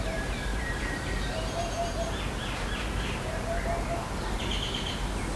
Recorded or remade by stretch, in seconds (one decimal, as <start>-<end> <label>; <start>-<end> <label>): 0.0-0.5 recorded; 0.5-3.6 remade; 3.6-5.4 recorded